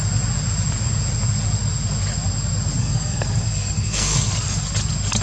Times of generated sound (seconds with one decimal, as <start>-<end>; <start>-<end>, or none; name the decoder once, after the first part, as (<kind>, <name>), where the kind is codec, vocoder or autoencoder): 2.8-4.3 (codec, SNAC)